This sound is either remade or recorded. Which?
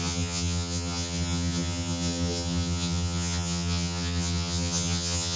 remade